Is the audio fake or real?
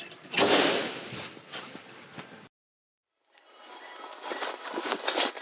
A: real